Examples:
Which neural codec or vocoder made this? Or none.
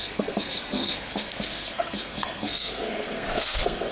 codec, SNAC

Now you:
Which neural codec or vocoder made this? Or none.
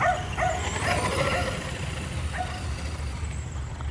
none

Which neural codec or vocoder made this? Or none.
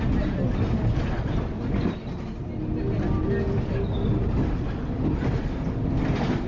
none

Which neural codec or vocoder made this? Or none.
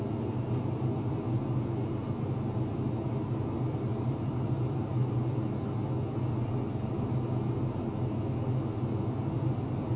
none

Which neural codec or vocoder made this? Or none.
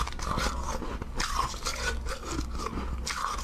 none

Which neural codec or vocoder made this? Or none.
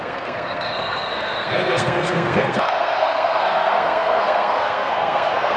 codec, SNAC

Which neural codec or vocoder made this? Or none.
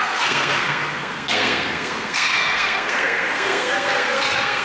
codec, SNAC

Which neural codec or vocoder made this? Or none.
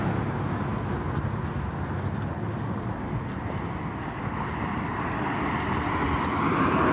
none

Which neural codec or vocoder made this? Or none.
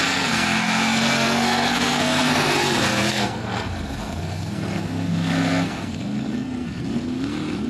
codec, SNAC